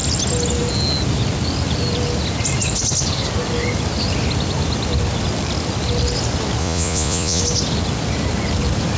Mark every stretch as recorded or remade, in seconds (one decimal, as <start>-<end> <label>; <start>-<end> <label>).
0.0-6.6 recorded; 6.6-7.4 remade; 7.4-9.0 recorded